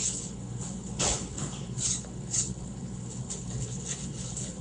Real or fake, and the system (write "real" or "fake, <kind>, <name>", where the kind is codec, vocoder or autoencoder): fake, codec, HILCodec